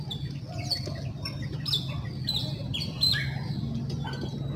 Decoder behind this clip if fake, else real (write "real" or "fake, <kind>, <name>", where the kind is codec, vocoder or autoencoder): real